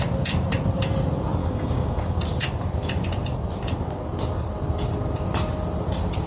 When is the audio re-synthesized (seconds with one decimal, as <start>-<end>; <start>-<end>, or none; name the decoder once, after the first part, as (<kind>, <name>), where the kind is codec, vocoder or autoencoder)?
1.4-2.2 (codec, DAC)